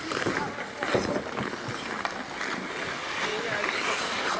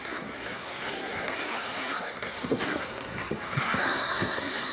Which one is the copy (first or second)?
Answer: second